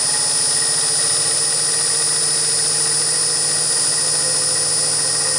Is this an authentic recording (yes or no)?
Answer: yes